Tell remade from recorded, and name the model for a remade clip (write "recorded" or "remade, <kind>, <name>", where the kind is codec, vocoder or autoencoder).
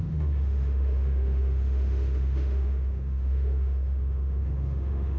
remade, autoencoder, DAC-VAE